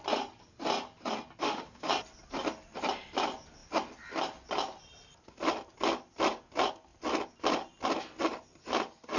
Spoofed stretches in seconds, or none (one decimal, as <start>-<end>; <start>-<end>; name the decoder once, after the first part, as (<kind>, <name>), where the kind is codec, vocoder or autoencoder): 1.4-1.9 (autoencoder, DAC-VAE)